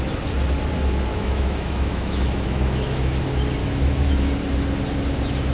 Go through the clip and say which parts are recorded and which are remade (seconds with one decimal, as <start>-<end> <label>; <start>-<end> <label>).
0.0-1.1 recorded; 1.1-3.2 remade; 3.2-3.6 recorded; 3.6-4.3 remade; 4.3-5.5 recorded